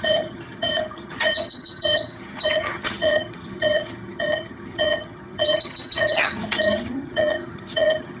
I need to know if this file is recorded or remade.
remade